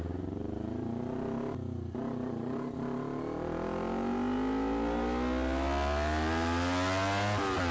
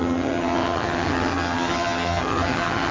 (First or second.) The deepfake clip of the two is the second